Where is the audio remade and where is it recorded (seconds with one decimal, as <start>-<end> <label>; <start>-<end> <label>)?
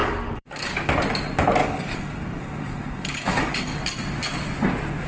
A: 0.0-0.7 remade; 0.7-1.6 recorded; 1.6-3.8 remade; 3.8-5.1 recorded